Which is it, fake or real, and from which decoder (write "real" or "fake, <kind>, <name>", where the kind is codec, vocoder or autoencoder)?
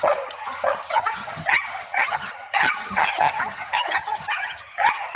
fake, vocoder, HiFi-GAN